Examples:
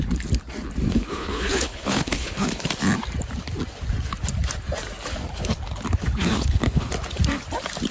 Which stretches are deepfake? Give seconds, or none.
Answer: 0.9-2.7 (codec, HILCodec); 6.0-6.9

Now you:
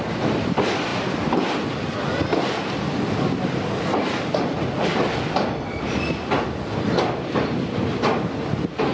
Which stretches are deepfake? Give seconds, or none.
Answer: none

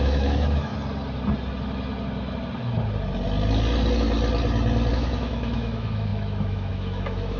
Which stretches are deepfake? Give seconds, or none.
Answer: 0.0-0.7 (autoencoder, DAC-VAE); 4.9-7.4